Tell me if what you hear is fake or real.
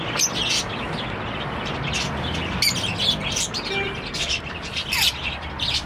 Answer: real